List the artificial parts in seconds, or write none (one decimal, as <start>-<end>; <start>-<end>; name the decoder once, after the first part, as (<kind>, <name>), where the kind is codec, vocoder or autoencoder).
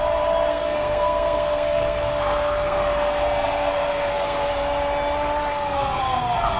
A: 0.5-4.5 (codec, SNAC); 5.5-6.6